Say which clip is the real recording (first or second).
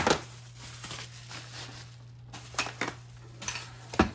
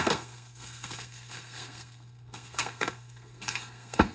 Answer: first